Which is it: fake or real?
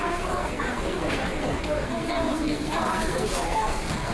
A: fake